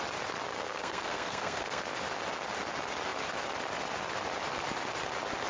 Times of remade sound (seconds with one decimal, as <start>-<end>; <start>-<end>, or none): 0.5-1.9